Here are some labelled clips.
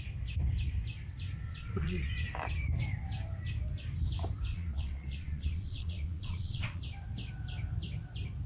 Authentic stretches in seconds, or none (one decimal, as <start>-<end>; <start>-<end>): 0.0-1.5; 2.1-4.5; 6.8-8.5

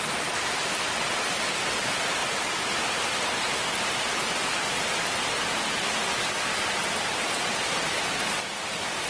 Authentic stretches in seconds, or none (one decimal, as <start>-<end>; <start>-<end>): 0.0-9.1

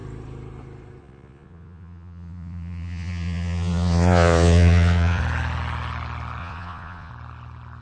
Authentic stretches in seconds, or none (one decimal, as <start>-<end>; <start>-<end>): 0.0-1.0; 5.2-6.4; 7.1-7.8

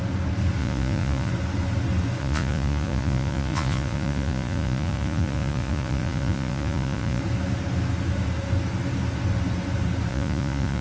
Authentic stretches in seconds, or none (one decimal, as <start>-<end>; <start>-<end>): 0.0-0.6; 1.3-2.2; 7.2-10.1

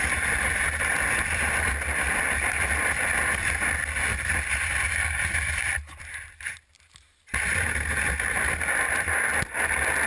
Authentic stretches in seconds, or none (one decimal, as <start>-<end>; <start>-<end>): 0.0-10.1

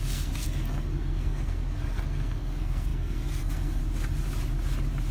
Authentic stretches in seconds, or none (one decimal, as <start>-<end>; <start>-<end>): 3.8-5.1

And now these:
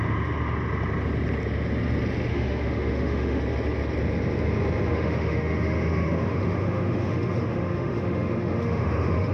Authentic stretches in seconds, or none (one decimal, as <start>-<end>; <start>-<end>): 0.0-2.3; 3.4-4.9

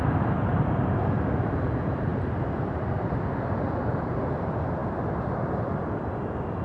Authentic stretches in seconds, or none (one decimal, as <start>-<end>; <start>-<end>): 0.0-6.6